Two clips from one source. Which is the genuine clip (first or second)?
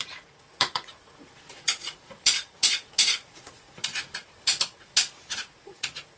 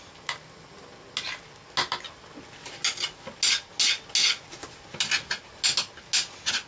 second